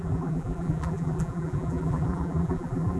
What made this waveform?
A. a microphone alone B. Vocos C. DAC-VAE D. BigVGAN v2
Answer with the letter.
D